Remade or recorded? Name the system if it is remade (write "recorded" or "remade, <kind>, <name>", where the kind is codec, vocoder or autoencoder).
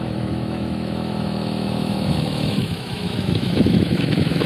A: remade, autoencoder, DAC-VAE